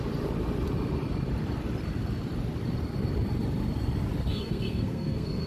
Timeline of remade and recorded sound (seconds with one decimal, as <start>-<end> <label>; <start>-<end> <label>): 0.0-4.3 recorded; 4.3-5.5 remade